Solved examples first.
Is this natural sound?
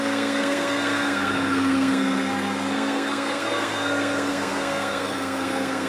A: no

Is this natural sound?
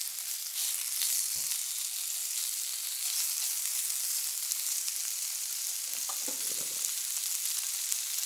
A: yes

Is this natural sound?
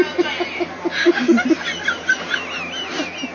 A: yes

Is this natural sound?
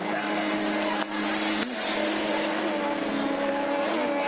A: yes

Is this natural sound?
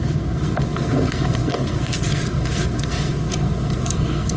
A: no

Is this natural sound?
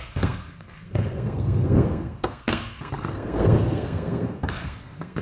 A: no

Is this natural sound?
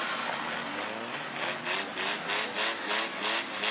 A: yes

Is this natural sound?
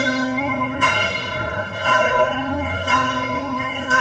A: no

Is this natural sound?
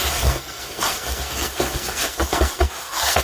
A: no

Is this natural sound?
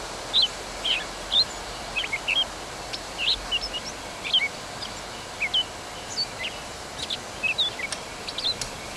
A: yes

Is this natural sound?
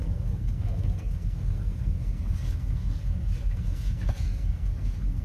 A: no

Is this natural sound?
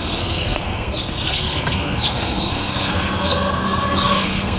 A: no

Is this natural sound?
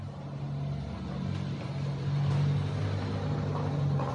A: yes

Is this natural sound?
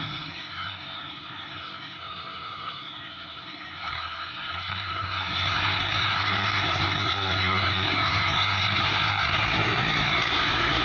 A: no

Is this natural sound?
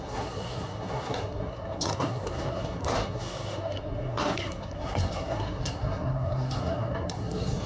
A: no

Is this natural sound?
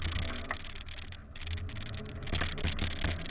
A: yes